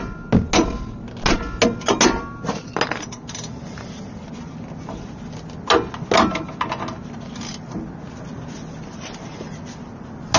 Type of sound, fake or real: real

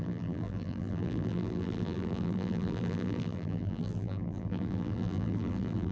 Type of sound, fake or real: fake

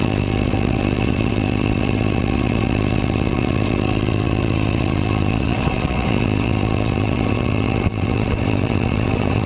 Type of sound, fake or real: fake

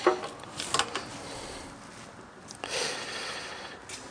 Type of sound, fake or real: real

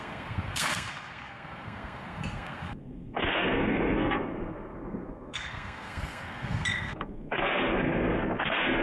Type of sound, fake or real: fake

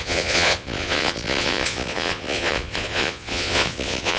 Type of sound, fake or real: fake